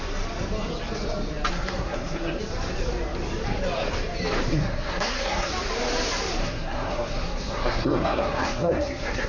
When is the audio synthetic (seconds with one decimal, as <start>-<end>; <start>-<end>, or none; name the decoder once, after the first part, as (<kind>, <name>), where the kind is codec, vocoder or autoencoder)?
1.5-2.4 (codec, SNAC); 4.5-5.5; 6.4-9.3